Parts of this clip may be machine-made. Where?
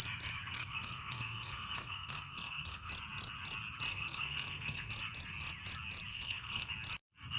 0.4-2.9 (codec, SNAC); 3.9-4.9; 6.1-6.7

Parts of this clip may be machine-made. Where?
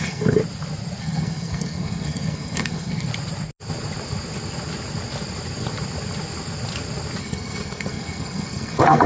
0.0-0.4 (codec, SNAC); 1.0-3.1; 7.2-9.1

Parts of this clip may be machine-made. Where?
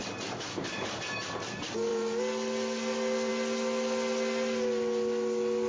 0.5-1.0 (codec, DAC)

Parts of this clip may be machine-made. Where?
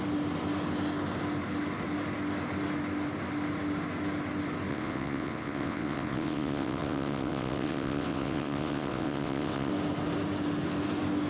4.7-9.7 (vocoder, WaveNeXt)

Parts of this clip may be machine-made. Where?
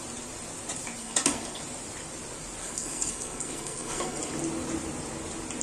1.0-1.6 (codec, SNAC); 2.6-4.2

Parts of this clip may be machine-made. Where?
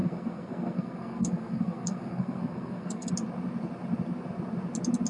0.0-3.1 (codec, SNAC)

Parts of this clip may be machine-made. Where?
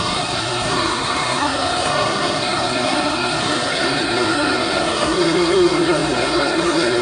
0.0-7.0 (codec, SNAC)